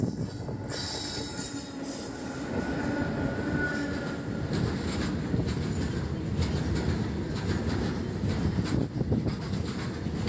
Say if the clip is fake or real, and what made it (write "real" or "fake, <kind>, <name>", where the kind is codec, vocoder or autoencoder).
real